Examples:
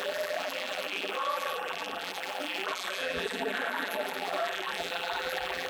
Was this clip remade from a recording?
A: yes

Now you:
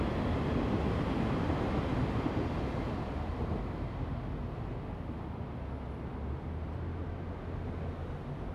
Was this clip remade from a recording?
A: no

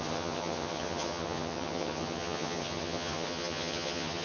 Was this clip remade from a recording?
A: yes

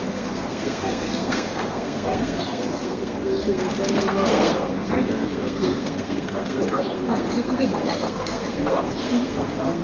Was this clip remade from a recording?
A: yes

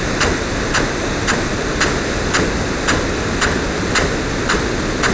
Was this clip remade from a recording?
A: no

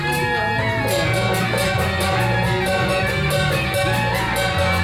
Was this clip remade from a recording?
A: no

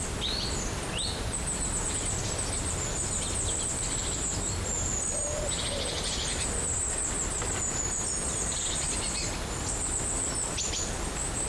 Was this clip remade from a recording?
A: no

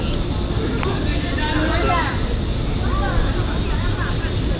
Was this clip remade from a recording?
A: no